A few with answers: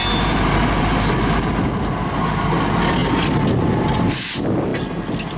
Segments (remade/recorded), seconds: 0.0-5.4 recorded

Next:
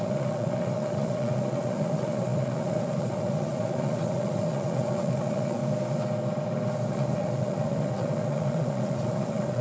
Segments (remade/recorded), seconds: 0.0-5.6 remade; 5.6-6.9 recorded; 6.9-9.6 remade

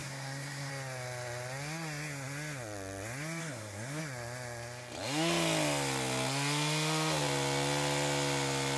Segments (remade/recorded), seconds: 0.0-0.7 remade; 0.7-3.4 recorded; 3.4-4.0 remade; 4.0-8.8 recorded

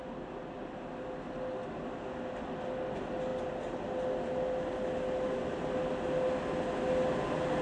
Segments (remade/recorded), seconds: 0.0-7.6 recorded

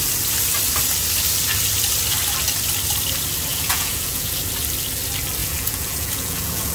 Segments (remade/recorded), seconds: 0.0-3.5 recorded; 3.5-4.4 remade; 4.4-5.4 recorded; 5.4-6.7 remade